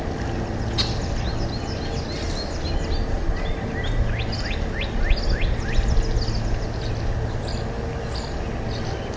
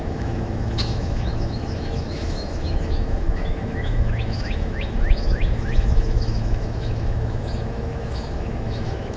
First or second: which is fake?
second